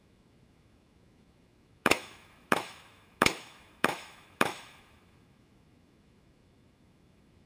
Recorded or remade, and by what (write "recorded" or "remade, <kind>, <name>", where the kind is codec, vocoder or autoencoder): remade, autoencoder, DAC-VAE